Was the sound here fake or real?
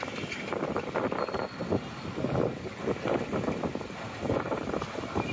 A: real